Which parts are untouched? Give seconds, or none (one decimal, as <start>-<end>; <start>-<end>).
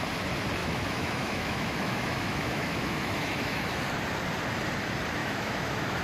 0.0-0.6; 3.8-5.2